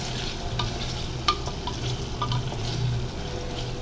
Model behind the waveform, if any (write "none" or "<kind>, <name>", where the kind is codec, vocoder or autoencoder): none